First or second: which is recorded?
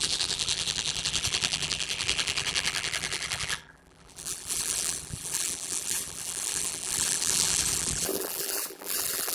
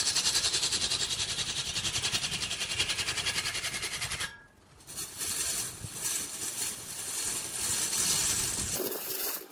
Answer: second